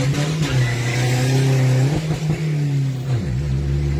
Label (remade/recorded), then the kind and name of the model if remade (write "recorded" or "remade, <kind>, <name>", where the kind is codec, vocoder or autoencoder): recorded